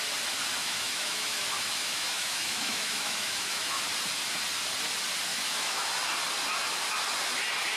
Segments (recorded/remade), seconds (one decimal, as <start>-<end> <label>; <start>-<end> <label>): 0.0-0.6 recorded; 0.6-3.8 remade; 3.8-5.3 recorded; 5.3-5.9 remade; 5.9-7.8 recorded